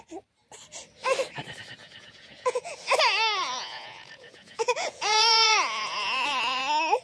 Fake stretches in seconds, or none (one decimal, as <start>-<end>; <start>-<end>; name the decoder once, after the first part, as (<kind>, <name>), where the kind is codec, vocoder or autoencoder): 1.8-2.7 (vocoder, Vocos); 3.4-6.6